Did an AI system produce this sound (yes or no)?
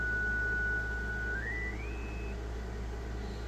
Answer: no